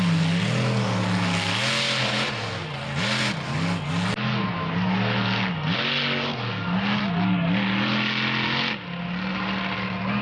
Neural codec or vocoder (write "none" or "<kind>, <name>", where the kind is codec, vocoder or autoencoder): none